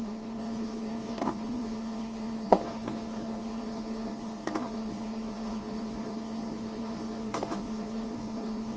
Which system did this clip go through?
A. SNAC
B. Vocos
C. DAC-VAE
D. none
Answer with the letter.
A